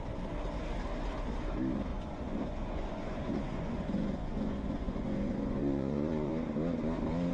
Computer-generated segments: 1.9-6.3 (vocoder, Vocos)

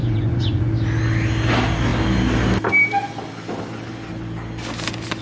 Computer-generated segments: 0.0-0.7 (vocoder, Vocos)

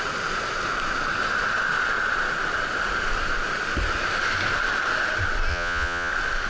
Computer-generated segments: 5.5-6.1 (vocoder, Vocos)